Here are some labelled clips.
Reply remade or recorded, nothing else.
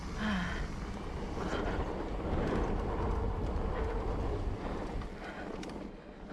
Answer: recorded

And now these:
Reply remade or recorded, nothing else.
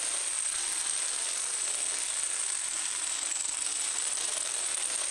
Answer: recorded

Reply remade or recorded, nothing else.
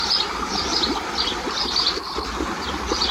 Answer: remade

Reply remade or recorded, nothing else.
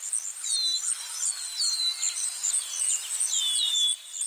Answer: recorded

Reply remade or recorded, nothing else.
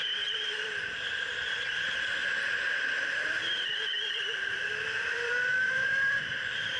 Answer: remade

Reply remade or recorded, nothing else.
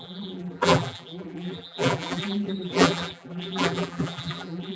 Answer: remade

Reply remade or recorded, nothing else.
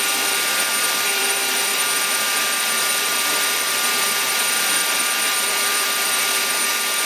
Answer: remade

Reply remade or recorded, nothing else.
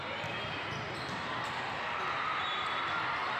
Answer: recorded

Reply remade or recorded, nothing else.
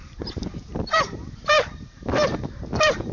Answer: remade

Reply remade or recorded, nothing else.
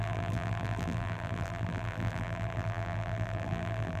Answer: remade